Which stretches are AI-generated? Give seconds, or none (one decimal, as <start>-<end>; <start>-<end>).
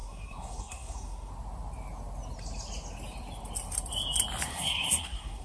0.0-1.3; 4.5-5.4